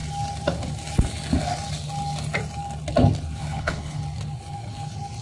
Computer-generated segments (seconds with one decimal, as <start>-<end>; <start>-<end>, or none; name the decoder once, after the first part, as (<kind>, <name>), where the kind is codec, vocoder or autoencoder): 3.4-4.0 (codec, HILCodec)